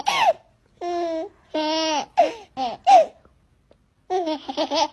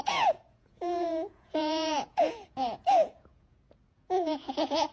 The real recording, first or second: first